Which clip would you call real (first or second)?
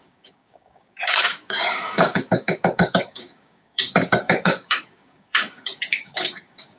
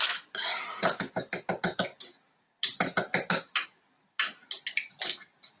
second